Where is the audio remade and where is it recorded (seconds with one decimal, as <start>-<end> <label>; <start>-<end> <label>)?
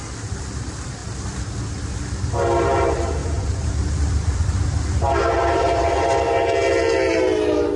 0.0-3.2 recorded; 3.2-3.9 remade; 3.9-7.8 recorded